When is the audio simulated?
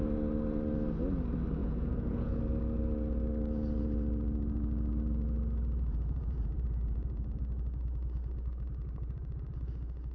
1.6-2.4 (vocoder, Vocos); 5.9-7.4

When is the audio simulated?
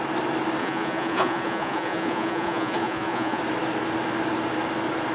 0.6-3.4 (vocoder, Vocos)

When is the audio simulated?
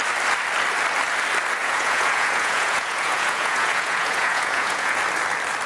1.6-5.0 (vocoder, Vocos)